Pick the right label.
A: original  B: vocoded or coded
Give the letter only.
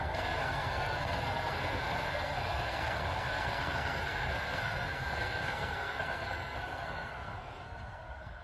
B